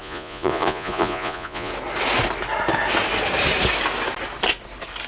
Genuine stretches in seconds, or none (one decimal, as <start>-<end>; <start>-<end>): 1.7-5.1